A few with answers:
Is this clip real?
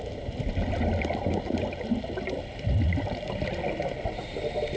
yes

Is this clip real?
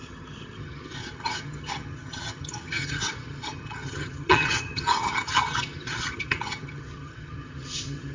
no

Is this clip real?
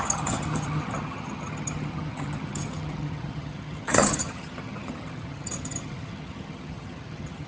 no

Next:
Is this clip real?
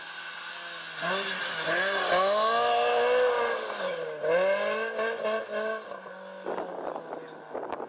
yes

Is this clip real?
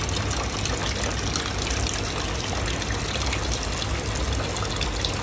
yes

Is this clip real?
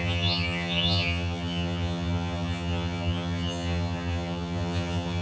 no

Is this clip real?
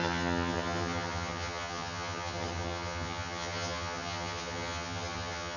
no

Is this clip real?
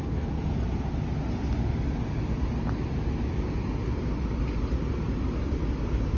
yes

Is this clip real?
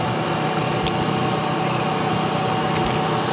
yes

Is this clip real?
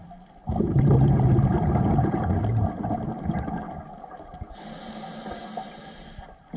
yes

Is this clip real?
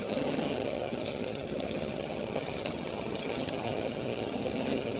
no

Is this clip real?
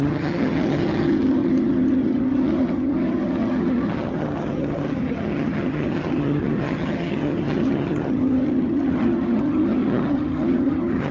no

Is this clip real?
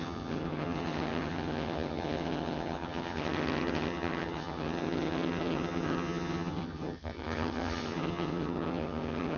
no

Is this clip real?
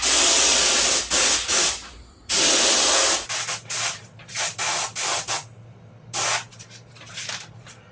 yes